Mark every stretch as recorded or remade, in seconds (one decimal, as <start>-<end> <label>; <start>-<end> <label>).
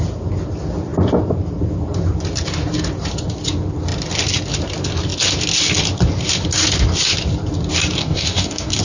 0.0-8.0 recorded; 8.0-8.8 remade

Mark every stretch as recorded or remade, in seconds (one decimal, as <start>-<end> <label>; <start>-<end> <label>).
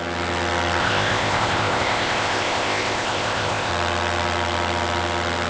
0.0-0.8 recorded; 0.8-3.7 remade; 3.7-5.5 recorded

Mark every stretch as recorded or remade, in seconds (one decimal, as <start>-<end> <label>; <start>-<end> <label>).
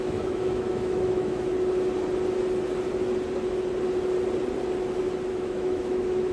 0.0-1.5 remade; 1.5-5.3 recorded; 5.3-6.3 remade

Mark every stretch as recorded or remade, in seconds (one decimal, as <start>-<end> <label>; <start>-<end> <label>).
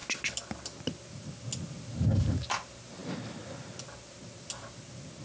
0.0-5.2 recorded